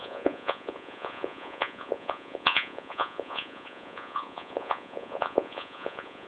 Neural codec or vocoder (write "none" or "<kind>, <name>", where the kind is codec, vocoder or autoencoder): vocoder, Vocos